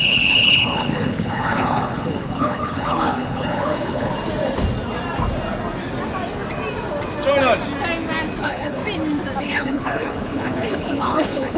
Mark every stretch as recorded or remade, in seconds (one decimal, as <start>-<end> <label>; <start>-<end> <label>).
0.0-4.1 remade; 4.1-8.4 recorded; 8.4-8.8 remade; 8.8-9.4 recorded; 9.4-11.6 remade